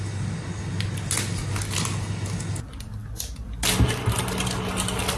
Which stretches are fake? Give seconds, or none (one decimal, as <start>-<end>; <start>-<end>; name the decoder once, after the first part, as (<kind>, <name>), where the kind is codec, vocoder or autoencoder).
none